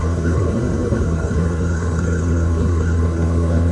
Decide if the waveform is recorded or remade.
remade